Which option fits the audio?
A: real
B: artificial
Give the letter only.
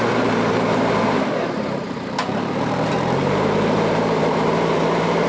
B